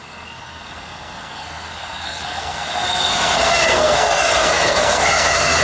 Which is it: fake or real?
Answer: fake